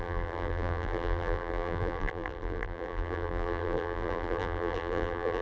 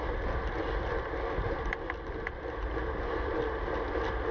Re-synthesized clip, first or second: first